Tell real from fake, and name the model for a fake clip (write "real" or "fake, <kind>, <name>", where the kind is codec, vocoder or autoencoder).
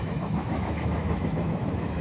fake, autoencoder, DAC-VAE